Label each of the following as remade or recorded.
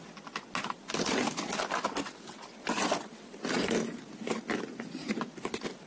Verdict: recorded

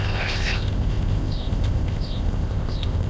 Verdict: remade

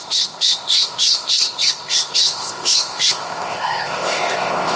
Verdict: remade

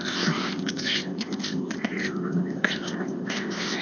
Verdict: remade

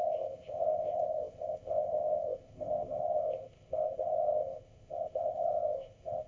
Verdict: remade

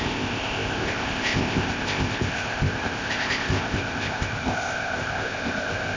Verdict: remade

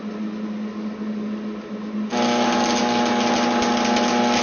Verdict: recorded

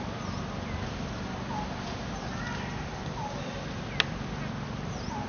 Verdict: recorded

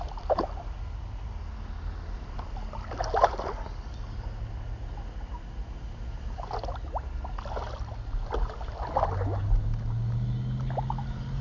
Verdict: recorded